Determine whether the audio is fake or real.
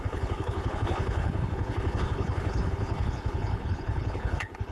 fake